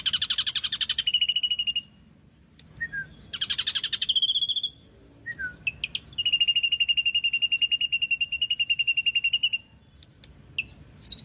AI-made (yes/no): no